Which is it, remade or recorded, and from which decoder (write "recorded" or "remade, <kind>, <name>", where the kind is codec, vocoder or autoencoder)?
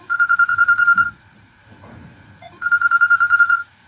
remade, vocoder, Vocos